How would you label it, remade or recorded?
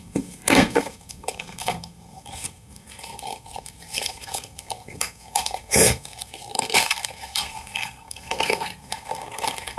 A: remade